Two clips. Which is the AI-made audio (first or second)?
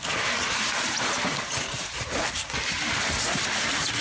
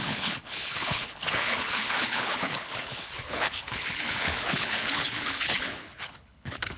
second